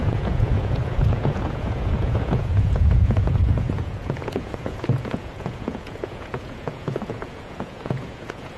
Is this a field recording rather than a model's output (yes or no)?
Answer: no